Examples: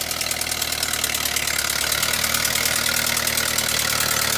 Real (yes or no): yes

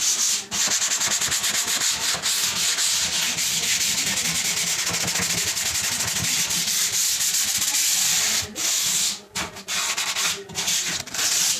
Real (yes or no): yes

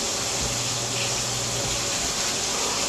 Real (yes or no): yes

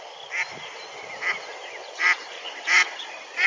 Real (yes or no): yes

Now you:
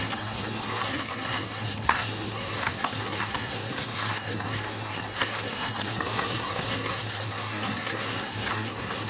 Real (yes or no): no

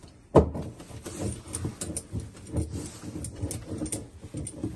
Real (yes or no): yes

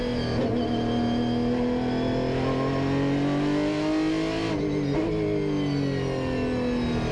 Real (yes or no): yes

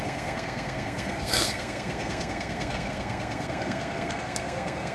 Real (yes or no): no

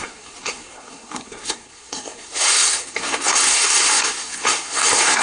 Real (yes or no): no